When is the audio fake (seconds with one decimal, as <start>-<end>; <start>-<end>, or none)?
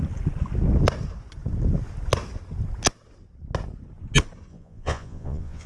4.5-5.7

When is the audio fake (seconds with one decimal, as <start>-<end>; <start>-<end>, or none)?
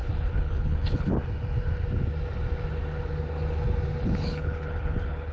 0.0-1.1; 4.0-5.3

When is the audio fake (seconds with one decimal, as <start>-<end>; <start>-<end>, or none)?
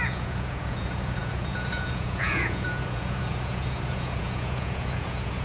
0.0-5.4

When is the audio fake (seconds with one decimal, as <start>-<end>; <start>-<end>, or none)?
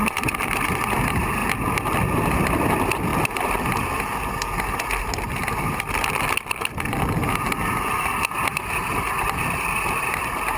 none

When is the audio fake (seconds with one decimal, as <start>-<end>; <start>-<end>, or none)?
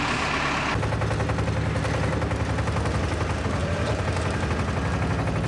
3.6-4.5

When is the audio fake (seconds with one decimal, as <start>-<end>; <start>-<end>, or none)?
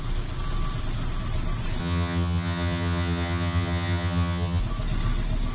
1.8-4.6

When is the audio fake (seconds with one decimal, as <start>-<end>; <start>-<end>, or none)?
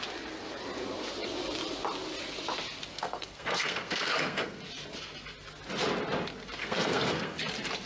2.9-4.6; 6.6-7.4